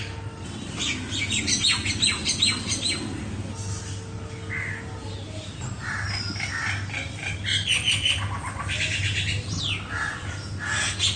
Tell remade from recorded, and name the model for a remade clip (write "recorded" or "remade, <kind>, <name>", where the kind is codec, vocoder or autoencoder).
recorded